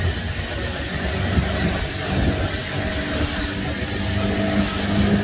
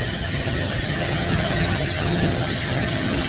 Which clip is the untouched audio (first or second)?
first